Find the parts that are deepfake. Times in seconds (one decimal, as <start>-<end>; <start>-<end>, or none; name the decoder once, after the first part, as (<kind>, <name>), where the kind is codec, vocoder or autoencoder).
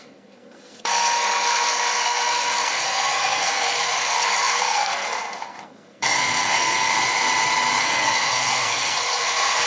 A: 0.0-6.9 (codec, SNAC); 7.8-9.7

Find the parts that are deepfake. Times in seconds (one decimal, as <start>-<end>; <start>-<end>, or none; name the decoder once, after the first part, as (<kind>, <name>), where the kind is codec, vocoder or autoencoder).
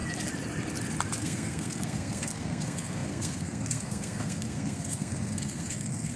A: 1.2-6.2 (codec, SNAC)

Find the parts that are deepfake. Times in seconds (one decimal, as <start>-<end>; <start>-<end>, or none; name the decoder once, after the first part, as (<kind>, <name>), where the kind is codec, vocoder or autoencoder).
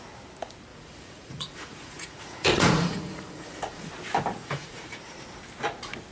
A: 0.7-3.9 (vocoder, Vocos); 4.4-5.2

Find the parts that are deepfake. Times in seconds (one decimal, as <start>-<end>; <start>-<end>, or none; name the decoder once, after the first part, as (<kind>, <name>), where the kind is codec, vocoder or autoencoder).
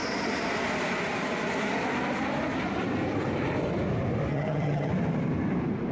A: 4.3-4.9 (vocoder, HiFi-GAN)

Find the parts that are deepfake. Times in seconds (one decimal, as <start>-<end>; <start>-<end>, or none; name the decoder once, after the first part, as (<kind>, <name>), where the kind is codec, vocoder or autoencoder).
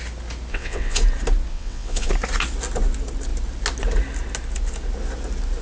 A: 0.5-1.0 (vocoder, WaveNeXt); 1.5-2.1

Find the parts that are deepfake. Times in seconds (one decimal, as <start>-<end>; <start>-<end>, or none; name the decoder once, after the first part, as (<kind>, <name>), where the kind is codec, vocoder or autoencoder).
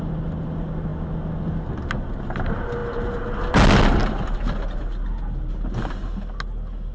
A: none